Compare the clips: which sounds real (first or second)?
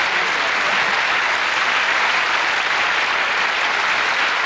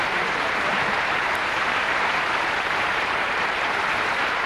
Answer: first